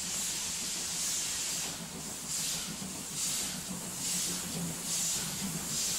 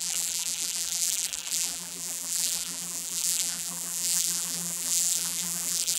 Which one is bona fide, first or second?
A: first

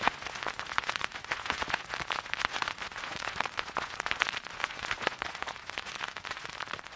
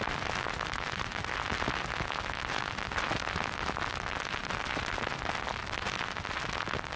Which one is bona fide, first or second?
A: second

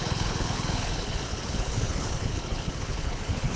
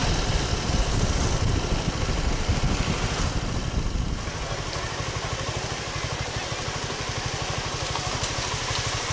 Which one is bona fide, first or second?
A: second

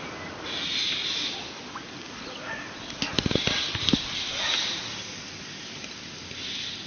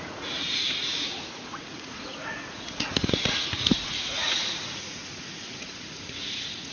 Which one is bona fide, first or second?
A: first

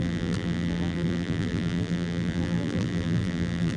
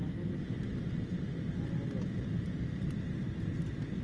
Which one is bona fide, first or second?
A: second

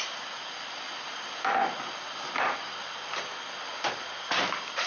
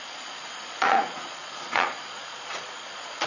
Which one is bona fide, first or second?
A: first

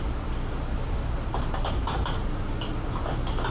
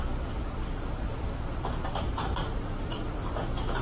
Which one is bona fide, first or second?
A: first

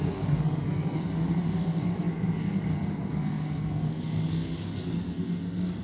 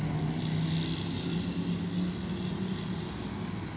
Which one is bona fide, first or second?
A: second